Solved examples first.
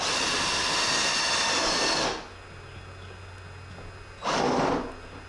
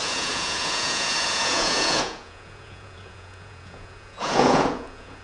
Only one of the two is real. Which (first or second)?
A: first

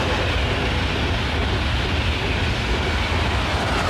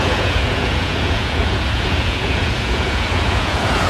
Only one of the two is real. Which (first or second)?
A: first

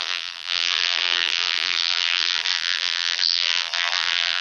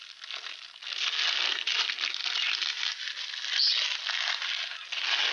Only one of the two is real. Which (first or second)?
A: second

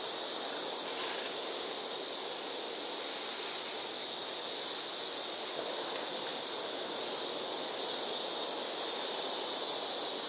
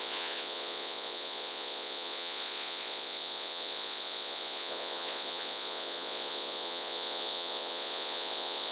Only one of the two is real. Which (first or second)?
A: first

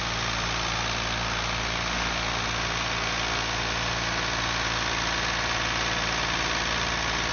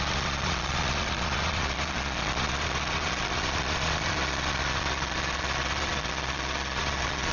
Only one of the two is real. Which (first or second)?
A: first